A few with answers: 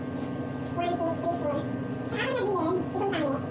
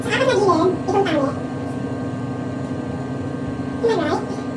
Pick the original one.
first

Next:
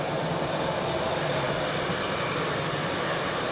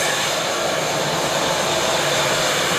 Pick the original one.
second